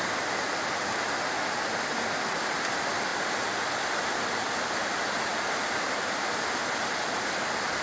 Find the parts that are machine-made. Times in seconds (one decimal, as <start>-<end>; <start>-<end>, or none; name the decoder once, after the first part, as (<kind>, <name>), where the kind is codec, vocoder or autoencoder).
none